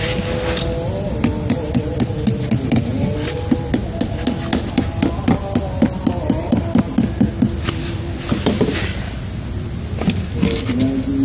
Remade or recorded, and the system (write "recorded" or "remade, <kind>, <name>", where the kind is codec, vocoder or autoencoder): recorded